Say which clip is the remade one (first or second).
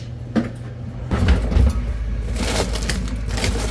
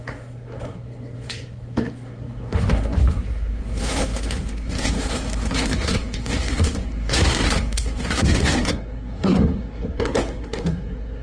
second